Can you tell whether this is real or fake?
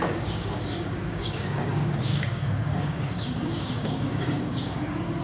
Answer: fake